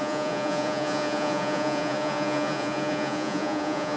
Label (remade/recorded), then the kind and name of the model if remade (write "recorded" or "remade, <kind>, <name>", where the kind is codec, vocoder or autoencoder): remade, vocoder, Vocos